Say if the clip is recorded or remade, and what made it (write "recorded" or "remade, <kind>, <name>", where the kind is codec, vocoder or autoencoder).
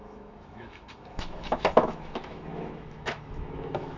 remade, autoencoder, DAC-VAE